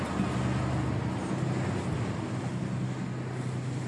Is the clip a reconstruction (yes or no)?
no